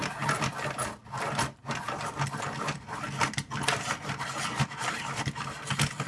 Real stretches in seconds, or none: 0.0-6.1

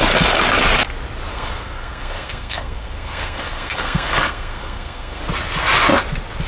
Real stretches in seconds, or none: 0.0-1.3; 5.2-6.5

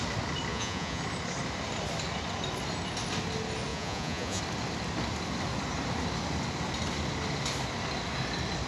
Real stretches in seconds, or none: 0.0-0.5; 1.0-3.7; 4.4-8.7

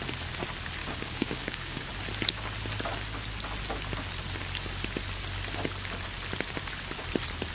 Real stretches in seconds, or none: 0.0-0.8; 1.9-7.5